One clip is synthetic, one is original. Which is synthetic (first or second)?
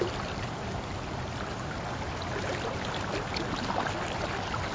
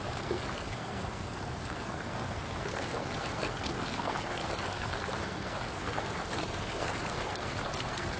second